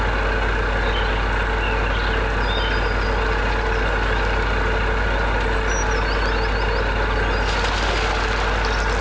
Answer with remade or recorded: recorded